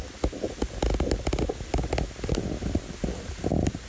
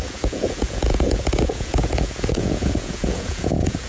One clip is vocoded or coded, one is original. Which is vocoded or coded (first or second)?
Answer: second